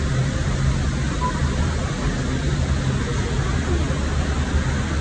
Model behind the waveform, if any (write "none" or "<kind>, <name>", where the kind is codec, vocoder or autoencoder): none